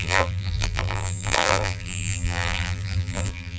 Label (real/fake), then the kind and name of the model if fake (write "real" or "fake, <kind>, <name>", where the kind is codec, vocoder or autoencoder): fake, vocoder, BigVGAN v2